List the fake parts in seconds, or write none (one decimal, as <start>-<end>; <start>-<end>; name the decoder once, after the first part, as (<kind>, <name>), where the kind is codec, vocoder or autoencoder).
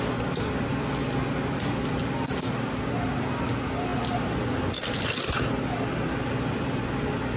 none